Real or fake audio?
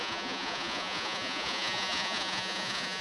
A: fake